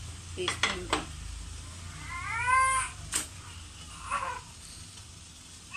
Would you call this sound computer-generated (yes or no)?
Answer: no